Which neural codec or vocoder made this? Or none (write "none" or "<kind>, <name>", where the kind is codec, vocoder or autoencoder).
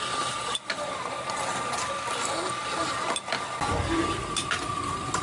none